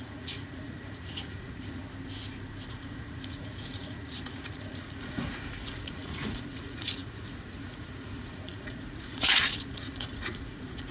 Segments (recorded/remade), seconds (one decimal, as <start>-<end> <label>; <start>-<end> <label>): 0.0-1.8 remade; 1.8-2.7 recorded; 2.7-10.9 remade